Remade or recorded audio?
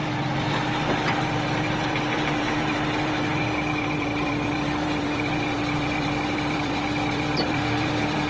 remade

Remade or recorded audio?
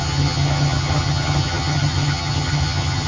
remade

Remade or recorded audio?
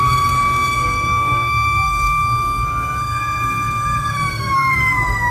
remade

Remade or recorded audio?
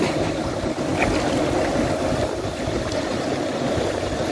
recorded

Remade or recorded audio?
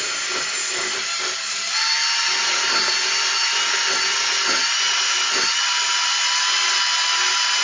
recorded